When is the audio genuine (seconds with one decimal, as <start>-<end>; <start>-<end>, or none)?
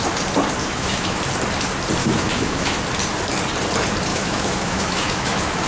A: 0.0-0.6; 1.2-2.0; 2.8-4.1